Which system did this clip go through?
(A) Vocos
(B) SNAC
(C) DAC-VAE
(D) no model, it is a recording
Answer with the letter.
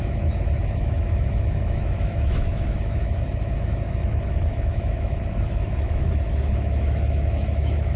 C